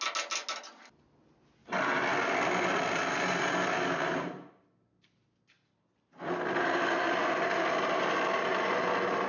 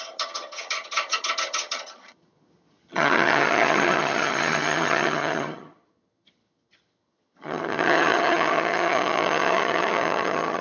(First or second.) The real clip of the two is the first